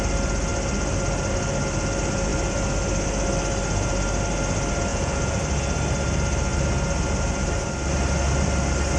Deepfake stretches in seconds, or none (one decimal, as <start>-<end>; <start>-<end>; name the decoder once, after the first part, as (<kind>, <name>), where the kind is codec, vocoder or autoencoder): 4.9-5.4 (vocoder, Vocos)